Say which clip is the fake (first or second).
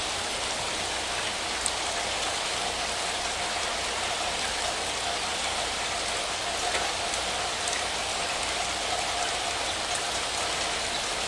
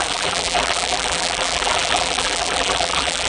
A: second